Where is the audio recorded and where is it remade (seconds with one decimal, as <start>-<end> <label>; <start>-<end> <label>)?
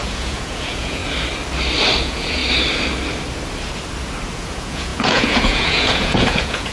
0.0-1.0 remade; 1.0-2.0 recorded; 2.0-2.4 remade; 2.4-4.4 recorded; 4.4-6.7 remade